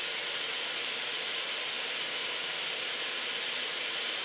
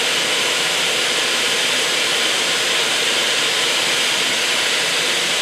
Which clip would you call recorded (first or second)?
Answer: first